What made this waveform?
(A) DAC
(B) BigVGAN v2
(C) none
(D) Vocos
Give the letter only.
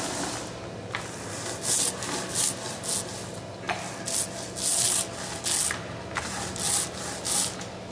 C